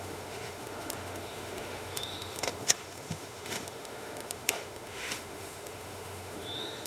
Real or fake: fake